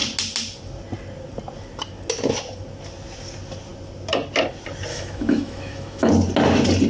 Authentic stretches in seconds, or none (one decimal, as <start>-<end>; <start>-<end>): 0.0-4.9; 6.1-6.9